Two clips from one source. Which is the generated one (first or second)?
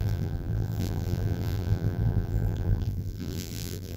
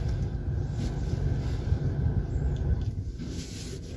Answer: first